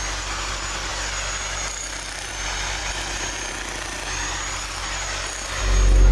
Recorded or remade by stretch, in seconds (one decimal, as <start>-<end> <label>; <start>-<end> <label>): 0.0-6.1 recorded